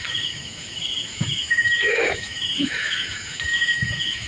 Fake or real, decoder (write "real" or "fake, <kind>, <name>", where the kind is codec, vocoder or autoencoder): fake, autoencoder, DAC-VAE